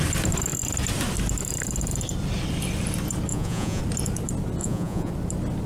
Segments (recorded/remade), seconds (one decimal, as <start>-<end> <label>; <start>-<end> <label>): 0.0-3.3 recorded; 3.3-3.8 remade; 3.8-4.6 recorded; 4.6-5.1 remade; 5.1-5.7 recorded